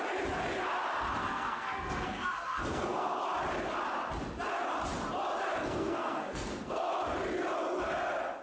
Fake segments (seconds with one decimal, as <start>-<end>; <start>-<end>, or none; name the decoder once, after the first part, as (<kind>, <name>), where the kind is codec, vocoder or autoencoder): 1.2-3.2 (codec, SNAC); 5.6-6.9